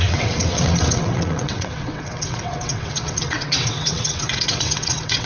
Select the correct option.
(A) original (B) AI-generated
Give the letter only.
B